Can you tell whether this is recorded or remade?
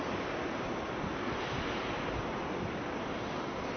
recorded